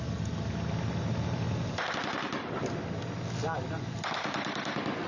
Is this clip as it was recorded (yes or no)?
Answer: yes